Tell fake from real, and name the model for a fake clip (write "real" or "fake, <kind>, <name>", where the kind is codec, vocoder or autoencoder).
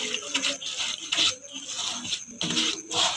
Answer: real